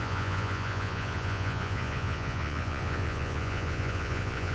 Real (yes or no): no